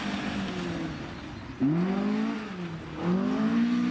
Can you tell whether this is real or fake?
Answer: real